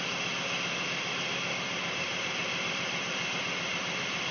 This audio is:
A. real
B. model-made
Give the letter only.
A